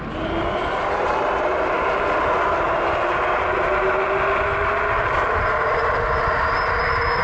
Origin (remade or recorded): recorded